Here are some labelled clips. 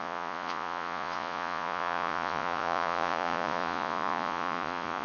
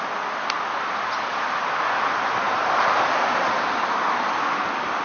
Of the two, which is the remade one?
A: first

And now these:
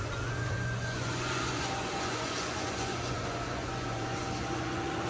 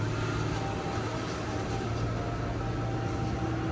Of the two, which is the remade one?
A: first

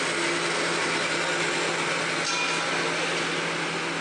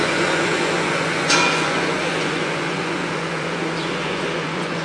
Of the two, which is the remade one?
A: second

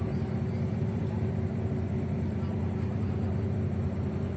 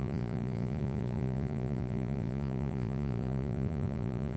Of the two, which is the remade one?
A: second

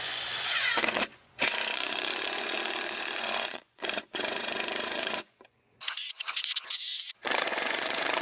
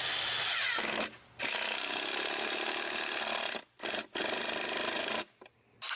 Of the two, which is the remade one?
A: first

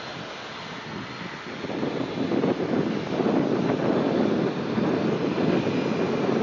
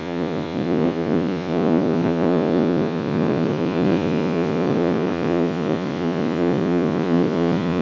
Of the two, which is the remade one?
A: second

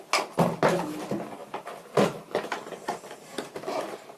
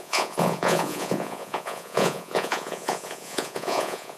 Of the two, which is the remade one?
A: second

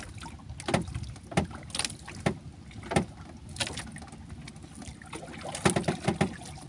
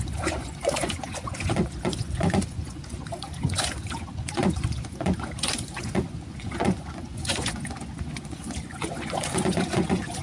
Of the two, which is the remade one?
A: second